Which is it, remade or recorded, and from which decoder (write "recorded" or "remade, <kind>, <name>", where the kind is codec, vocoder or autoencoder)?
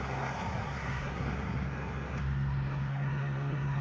remade, codec, SNAC